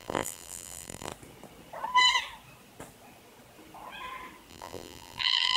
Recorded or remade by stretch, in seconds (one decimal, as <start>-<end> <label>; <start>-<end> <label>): 0.0-1.1 remade; 1.1-4.5 recorded; 4.5-5.6 remade